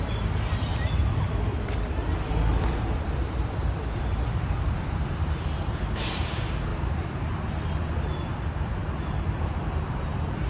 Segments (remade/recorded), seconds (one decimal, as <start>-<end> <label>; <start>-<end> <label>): 0.0-0.7 recorded; 0.7-5.1 remade; 5.1-8.1 recorded; 8.1-9.7 remade; 9.7-10.5 recorded